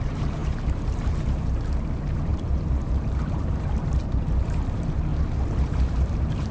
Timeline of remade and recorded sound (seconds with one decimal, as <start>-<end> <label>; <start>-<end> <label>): 0.0-6.5 remade